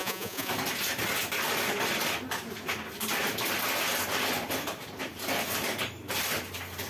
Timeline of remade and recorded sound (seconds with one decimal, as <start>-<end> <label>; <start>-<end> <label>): 0.0-0.5 remade; 0.5-6.9 recorded